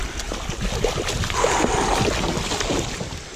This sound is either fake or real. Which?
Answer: real